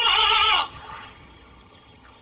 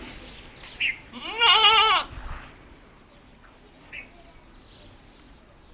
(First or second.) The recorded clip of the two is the second